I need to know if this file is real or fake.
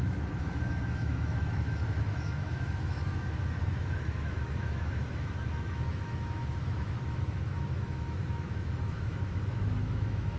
fake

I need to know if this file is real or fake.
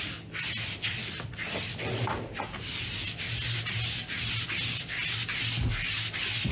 real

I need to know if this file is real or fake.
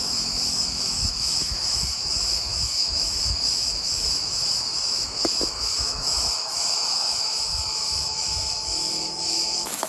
fake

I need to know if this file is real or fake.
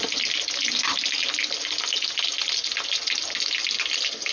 real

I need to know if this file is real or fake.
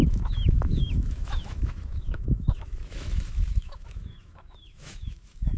fake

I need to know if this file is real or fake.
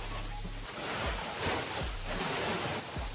real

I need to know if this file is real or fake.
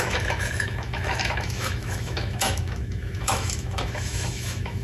fake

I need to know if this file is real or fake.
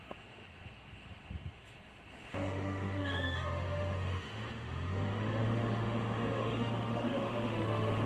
fake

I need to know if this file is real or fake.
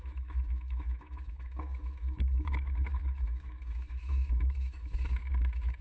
fake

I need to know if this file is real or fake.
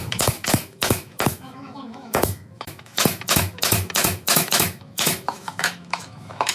fake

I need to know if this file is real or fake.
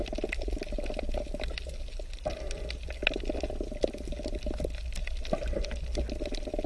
real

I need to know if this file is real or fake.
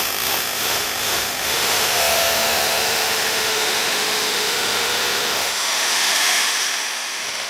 fake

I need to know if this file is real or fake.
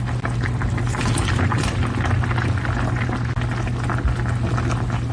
real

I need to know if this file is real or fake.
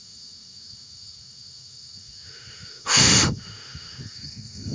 fake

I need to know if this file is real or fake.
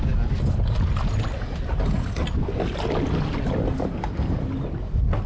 real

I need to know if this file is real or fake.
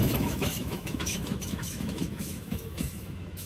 fake